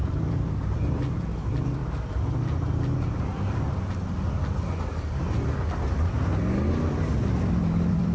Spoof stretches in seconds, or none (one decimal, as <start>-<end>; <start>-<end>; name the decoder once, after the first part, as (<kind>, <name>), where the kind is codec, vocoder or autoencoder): 0.0-1.8 (vocoder, BigVGAN v2); 6.7-8.1